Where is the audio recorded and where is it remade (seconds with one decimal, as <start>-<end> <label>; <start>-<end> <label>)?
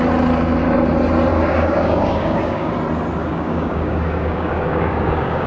0.0-1.3 recorded; 1.3-2.7 remade; 2.7-3.2 recorded; 3.2-5.5 remade